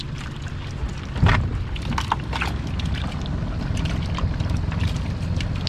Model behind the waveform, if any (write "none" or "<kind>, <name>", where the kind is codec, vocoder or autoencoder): none